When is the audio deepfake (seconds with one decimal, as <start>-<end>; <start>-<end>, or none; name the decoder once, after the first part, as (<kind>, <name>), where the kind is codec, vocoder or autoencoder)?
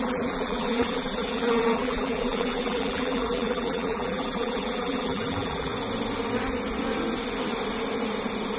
0.0-5.7 (vocoder, BigVGAN v2)